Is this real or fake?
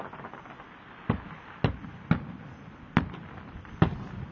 real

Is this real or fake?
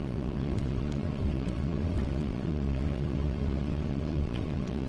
fake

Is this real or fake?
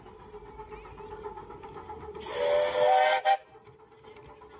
real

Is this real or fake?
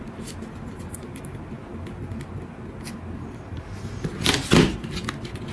real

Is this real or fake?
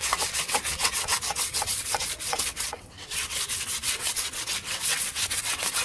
fake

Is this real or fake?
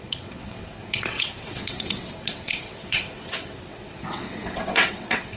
fake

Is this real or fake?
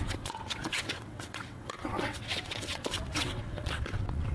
fake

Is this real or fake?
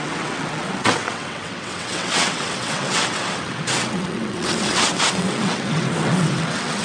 fake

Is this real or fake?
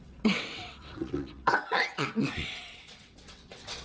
fake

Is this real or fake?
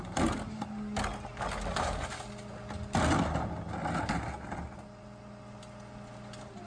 real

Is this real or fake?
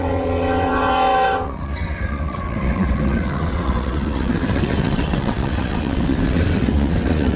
fake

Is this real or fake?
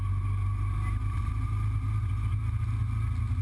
real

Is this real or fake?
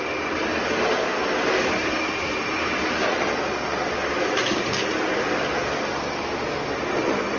real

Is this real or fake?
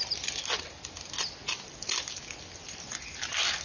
real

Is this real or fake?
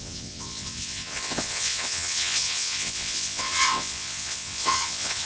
fake